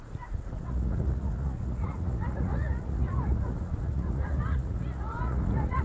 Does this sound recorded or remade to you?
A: remade